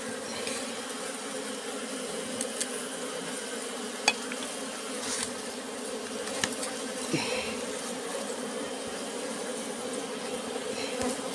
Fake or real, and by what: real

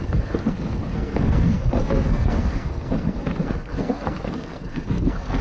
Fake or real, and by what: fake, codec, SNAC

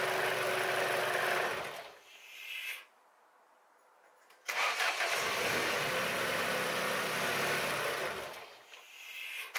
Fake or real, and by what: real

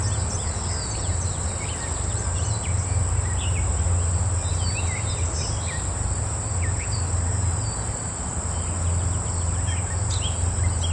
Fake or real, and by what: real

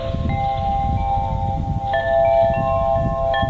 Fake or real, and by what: real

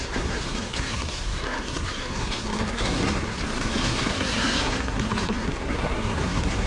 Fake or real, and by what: fake, codec, SNAC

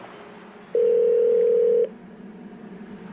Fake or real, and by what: real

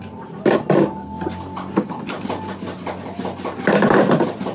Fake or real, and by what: real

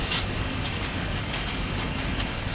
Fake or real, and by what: fake, codec, DAC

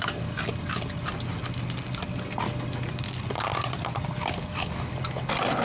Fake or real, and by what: real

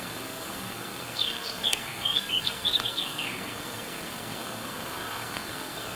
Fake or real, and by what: fake, codec, SNAC